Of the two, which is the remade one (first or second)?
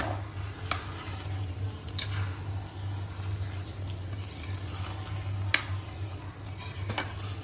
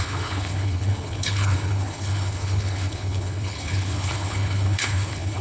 second